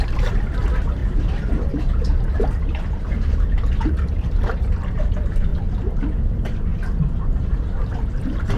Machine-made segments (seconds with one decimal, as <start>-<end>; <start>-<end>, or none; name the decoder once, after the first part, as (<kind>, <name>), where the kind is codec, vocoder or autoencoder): 0.0-1.0 (vocoder, BigVGAN v2); 3.0-5.5; 6.2-8.6